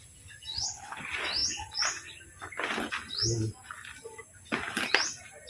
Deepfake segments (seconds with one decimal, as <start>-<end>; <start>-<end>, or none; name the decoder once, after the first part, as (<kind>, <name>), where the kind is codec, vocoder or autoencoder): 0.5-1.0 (codec, HILCodec)